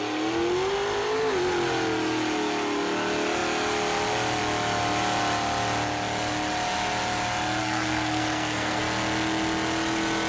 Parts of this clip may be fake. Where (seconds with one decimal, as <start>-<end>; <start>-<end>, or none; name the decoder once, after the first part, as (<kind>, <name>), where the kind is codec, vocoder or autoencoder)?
7.6-8.8 (codec, SNAC)